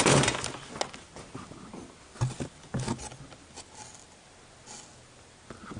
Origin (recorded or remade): recorded